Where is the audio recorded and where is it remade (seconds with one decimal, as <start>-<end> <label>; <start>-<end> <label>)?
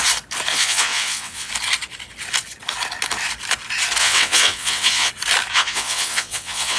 0.0-0.5 recorded; 0.5-1.5 remade; 1.5-4.0 recorded; 4.0-5.1 remade; 5.1-5.5 recorded; 5.5-6.8 remade